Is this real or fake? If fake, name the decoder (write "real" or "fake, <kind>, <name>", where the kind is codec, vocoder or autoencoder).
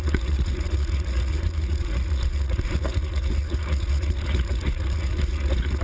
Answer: fake, vocoder, Vocos